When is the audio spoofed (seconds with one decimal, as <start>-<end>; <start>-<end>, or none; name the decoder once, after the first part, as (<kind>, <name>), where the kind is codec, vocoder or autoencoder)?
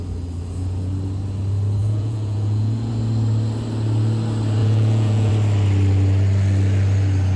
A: 1.8-2.9 (vocoder, Vocos); 4.6-5.3